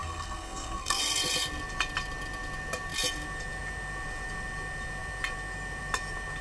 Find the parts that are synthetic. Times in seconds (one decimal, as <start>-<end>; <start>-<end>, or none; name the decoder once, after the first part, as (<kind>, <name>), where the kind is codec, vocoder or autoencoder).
0.0-1.0 (codec, SNAC)